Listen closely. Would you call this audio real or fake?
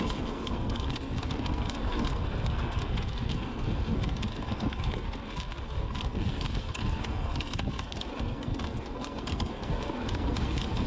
fake